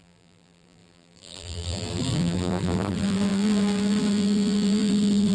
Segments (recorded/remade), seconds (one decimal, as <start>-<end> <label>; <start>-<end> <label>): 0.0-5.3 remade